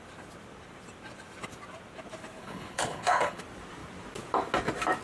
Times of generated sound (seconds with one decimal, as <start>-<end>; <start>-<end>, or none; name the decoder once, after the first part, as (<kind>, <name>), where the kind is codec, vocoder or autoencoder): 2.4-3.4 (codec, HILCodec)